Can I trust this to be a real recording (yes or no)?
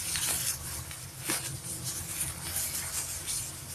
yes